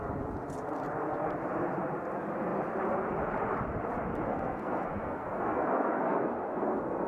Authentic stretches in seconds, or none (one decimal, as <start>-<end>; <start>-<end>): 0.0-4.3